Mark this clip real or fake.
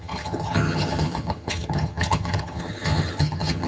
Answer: fake